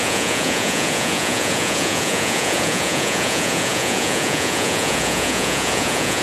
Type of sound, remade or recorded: remade